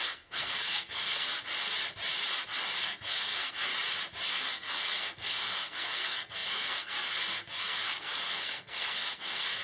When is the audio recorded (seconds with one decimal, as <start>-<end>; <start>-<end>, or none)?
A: 1.3-2.8; 3.7-4.3